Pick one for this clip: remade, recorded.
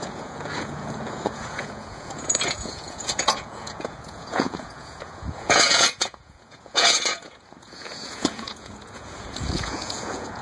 remade